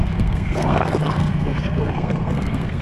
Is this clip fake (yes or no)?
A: yes